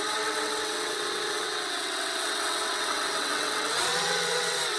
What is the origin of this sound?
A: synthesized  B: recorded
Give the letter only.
A